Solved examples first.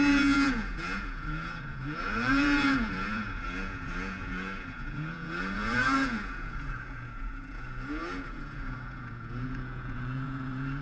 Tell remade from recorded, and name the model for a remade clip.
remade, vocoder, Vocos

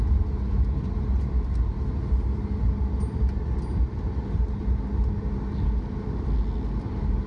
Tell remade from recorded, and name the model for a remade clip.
recorded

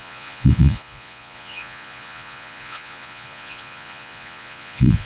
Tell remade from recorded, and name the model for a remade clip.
remade, vocoder, Vocos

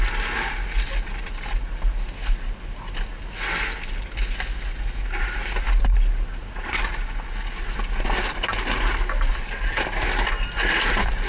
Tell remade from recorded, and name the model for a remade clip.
recorded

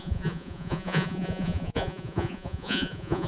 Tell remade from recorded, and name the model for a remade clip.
remade, vocoder, Vocos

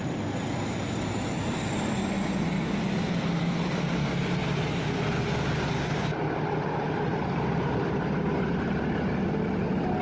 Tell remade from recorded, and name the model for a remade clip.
recorded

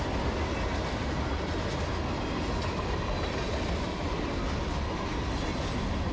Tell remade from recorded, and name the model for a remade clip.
recorded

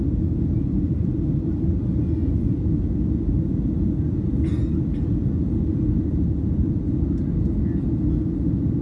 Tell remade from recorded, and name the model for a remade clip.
recorded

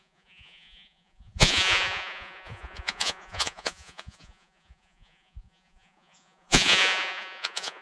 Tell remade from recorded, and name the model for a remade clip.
remade, vocoder, Vocos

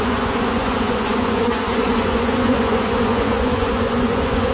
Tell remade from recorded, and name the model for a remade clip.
remade, vocoder, Vocos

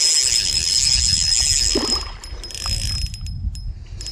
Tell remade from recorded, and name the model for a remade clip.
recorded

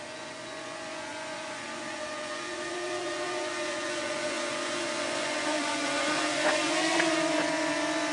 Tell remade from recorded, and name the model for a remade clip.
remade, vocoder, Vocos